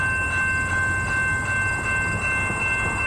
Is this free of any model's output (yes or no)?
yes